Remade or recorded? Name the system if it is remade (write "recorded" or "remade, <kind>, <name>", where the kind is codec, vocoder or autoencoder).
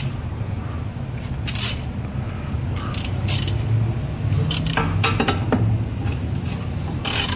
recorded